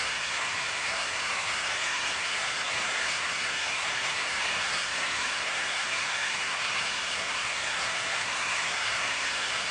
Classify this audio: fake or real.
fake